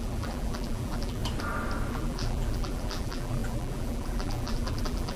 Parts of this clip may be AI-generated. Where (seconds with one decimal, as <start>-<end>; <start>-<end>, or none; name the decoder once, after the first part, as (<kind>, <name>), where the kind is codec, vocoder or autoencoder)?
0.0-1.2 (vocoder, BigVGAN v2); 1.9-5.2